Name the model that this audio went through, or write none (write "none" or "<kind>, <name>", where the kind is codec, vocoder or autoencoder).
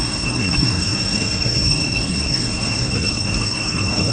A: codec, SNAC